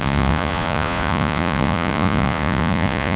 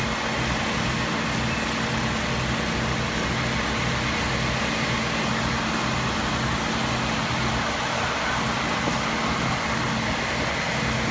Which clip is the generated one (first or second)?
first